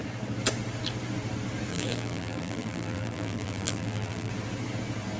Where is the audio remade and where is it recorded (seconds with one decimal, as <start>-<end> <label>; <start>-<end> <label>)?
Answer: 0.0-1.7 recorded; 1.7-4.3 remade; 4.3-5.2 recorded